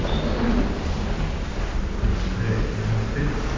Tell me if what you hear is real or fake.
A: real